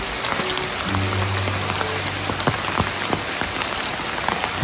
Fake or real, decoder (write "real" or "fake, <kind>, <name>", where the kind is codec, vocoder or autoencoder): real